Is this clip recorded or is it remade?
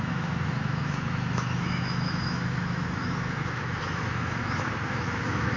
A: remade